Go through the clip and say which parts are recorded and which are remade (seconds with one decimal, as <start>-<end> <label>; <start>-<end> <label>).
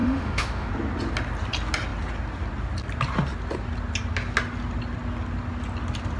0.0-0.7 remade; 0.7-6.2 recorded